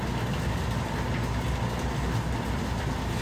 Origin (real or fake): real